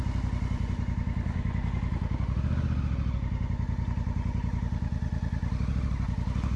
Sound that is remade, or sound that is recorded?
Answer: recorded